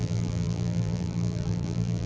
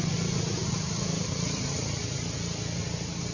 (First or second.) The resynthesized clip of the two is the first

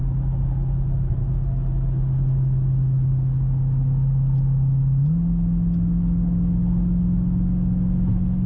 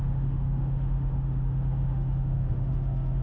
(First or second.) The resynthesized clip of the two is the second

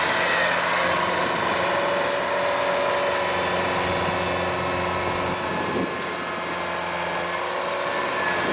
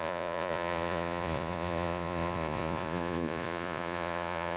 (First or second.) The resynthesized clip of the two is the second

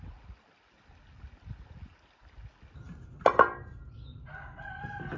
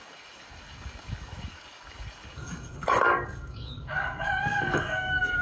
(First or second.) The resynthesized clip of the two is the second